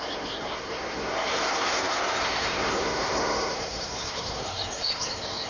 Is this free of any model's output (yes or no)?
no